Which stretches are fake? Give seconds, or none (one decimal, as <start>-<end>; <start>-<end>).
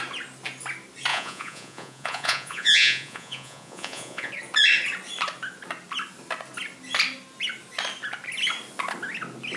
1.1-4.3